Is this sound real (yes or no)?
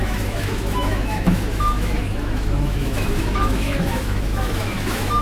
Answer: no